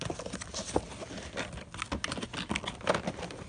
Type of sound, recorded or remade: recorded